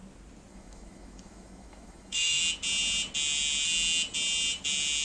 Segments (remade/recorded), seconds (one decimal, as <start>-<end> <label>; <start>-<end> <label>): 0.0-0.5 recorded; 0.5-2.4 remade; 2.4-5.0 recorded